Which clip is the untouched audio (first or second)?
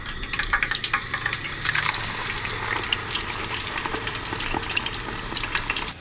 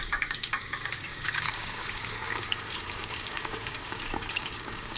first